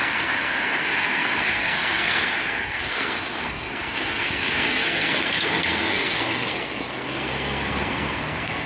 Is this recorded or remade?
remade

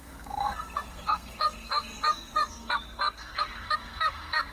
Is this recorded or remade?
remade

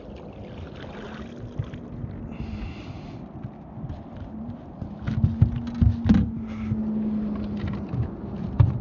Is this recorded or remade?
recorded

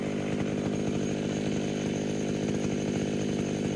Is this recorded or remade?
recorded